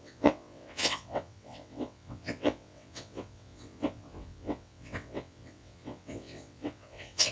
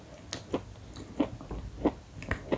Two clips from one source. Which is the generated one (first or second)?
first